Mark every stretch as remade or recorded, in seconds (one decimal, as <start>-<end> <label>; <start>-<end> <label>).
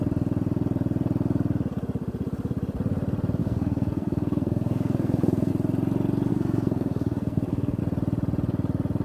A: 0.0-3.4 recorded; 3.4-5.5 remade; 5.5-6.3 recorded; 6.3-7.8 remade; 7.8-9.0 recorded